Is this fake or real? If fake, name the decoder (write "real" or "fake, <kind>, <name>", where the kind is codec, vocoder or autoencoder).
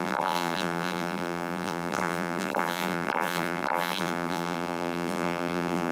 fake, vocoder, BigVGAN v2